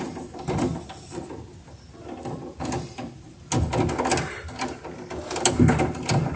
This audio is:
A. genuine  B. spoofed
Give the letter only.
A